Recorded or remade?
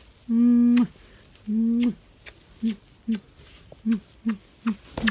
recorded